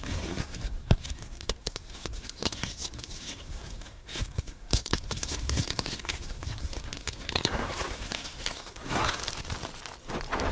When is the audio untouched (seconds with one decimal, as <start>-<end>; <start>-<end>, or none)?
9.2-10.5